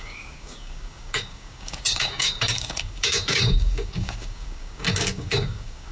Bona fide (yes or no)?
no